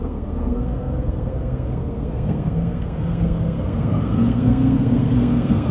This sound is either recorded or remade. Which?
remade